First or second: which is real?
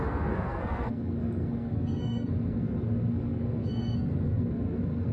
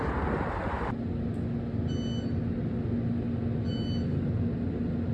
second